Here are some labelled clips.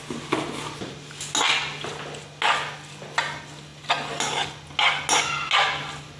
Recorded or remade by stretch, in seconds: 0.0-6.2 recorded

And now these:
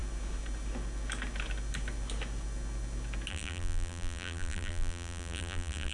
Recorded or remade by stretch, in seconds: 0.0-3.3 recorded; 3.3-5.9 remade

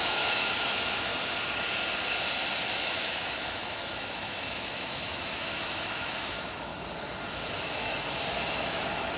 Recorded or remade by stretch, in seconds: 0.0-1.1 remade; 1.1-2.7 recorded; 2.7-6.7 remade; 6.7-7.5 recorded; 7.5-7.9 remade; 7.9-8.5 recorded; 8.5-9.2 remade